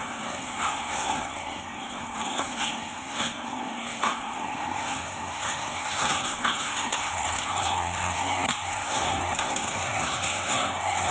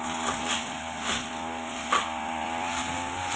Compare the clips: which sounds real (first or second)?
second